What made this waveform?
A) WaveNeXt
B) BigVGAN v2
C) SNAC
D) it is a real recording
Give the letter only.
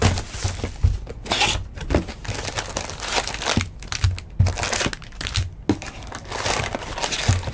D